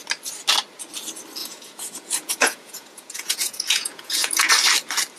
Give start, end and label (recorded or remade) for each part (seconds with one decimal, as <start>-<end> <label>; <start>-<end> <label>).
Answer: 0.0-1.4 recorded; 1.4-4.5 remade; 4.5-5.2 recorded